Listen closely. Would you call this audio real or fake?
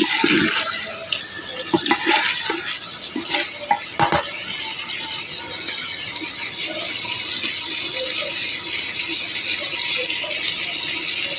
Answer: real